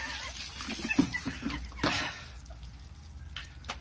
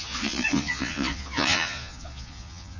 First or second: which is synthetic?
second